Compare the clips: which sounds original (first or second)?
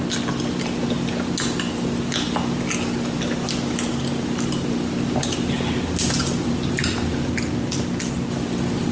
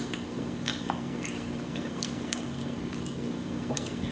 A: first